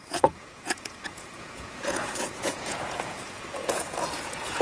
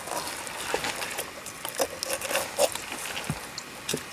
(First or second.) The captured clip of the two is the second